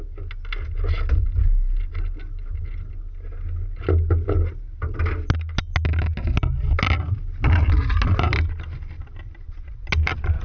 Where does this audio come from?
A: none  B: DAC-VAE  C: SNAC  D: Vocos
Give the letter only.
A